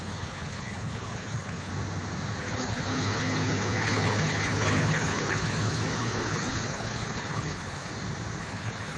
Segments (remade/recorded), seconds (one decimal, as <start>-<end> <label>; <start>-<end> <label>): 0.0-1.7 remade; 1.7-2.4 recorded; 2.4-7.9 remade; 7.9-8.4 recorded; 8.4-9.0 remade